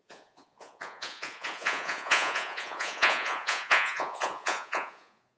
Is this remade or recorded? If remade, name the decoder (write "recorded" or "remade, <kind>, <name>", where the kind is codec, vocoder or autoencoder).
remade, vocoder, Vocos